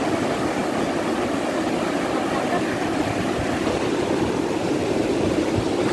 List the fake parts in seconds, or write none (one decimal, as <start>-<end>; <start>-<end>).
4.8-5.5